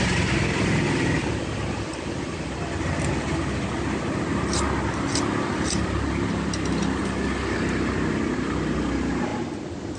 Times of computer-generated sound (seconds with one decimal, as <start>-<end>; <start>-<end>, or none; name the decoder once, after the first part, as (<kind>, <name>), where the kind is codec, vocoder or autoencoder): none